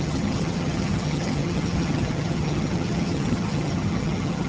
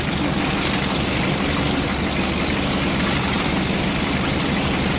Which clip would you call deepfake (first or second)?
first